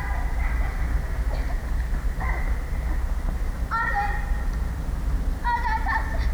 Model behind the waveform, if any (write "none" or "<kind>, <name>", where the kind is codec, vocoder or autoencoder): none